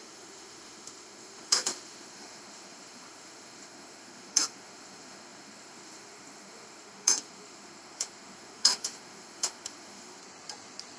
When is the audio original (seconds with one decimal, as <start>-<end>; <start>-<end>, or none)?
10.2-11.0